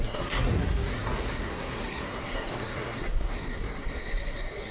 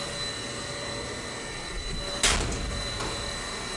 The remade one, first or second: first